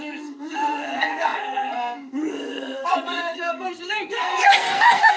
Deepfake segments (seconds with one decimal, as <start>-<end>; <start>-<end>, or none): 0.0-5.2